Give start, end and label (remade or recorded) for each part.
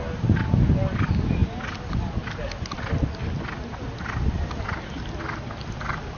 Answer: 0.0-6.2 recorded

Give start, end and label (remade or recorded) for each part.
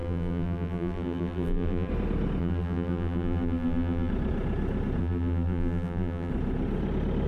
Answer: 0.0-1.9 remade; 1.9-2.4 recorded; 2.4-4.1 remade; 4.1-5.0 recorded; 5.0-6.3 remade; 6.3-7.3 recorded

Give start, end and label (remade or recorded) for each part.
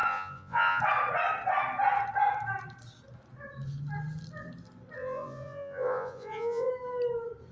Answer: 0.0-0.8 remade; 0.8-5.0 recorded; 5.0-6.7 remade; 6.7-7.5 recorded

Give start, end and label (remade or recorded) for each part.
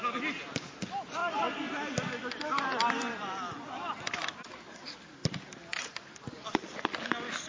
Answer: 0.0-7.5 recorded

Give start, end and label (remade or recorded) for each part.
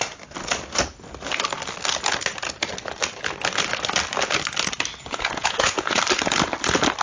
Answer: 0.0-5.0 recorded; 5.0-6.0 remade; 6.0-7.0 recorded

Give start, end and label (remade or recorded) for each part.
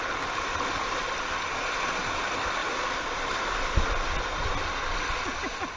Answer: 0.0-5.8 recorded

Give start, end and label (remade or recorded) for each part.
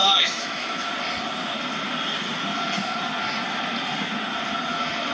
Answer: 0.0-0.9 remade; 0.9-5.1 recorded